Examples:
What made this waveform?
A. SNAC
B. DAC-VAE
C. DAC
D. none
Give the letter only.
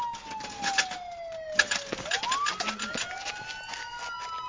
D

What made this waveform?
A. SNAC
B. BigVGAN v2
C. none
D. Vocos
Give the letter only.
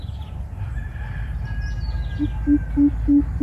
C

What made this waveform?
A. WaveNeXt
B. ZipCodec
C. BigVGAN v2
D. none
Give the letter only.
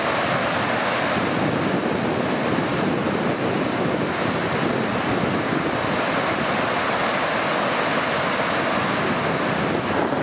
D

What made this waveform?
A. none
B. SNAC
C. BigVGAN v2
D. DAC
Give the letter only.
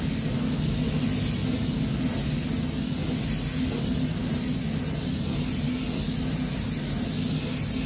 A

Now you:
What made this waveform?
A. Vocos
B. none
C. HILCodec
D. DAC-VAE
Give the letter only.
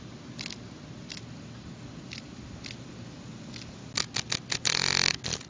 B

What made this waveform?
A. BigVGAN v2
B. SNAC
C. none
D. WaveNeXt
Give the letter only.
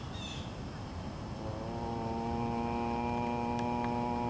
C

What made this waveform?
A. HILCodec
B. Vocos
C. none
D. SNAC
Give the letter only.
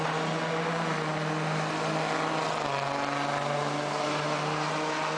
C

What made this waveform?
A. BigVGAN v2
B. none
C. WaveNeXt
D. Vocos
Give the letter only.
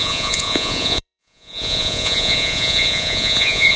D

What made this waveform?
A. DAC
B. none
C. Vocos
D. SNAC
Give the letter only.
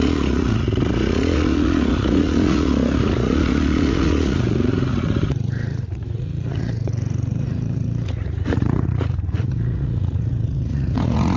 C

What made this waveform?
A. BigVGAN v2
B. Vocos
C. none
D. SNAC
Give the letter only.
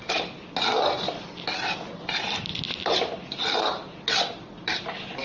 C